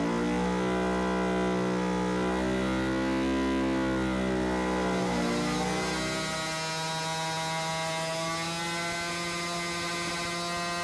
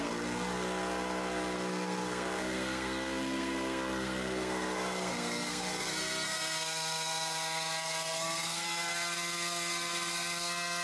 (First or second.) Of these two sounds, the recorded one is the first